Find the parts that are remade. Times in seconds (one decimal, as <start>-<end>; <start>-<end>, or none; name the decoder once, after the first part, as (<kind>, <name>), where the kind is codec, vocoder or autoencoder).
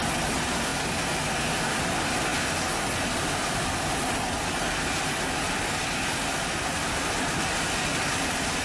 none